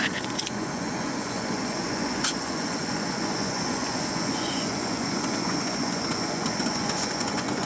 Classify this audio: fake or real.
fake